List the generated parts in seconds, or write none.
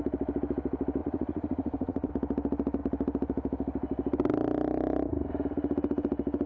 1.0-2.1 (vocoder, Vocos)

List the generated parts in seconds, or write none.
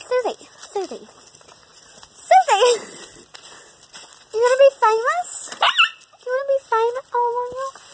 7.3-7.9 (vocoder, BigVGAN v2)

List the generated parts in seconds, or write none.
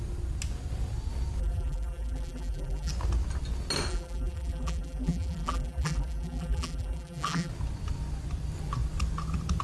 1.4-2.9 (vocoder, BigVGAN v2); 3.9-7.5